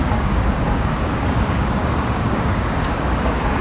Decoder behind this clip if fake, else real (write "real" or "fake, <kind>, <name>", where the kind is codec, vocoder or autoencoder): fake, codec, DAC